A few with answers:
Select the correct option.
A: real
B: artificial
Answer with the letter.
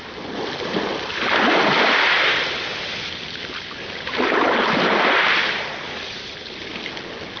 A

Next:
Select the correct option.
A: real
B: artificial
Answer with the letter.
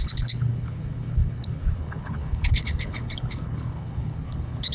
B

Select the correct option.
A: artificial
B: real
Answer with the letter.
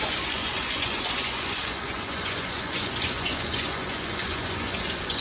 A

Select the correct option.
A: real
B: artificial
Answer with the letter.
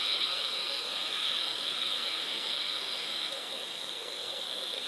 B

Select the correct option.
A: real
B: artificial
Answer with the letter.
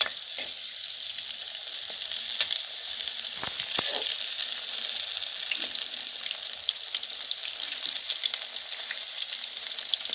A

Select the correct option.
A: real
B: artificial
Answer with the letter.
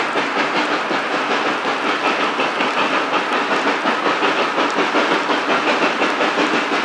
A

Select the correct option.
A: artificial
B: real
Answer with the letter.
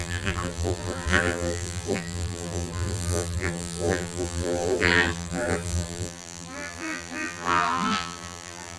A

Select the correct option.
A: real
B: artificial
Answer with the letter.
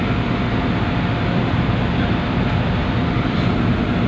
A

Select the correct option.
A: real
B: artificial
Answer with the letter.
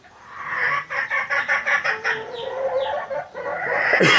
B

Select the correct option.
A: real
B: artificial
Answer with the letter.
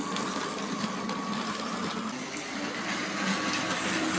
A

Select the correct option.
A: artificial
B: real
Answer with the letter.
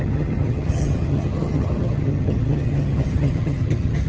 A